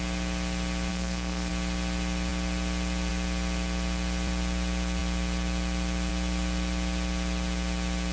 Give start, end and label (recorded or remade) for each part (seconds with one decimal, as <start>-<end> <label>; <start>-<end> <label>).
0.0-0.9 recorded; 0.9-1.5 remade; 1.5-8.1 recorded